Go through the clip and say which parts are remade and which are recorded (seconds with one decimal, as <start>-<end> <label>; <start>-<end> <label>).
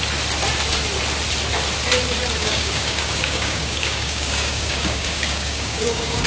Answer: 0.0-2.4 recorded; 2.4-6.3 remade